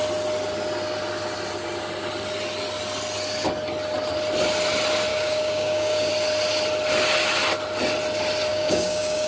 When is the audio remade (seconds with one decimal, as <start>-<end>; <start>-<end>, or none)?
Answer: 5.1-6.1; 8.5-9.3